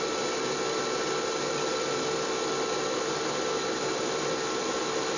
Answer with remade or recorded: remade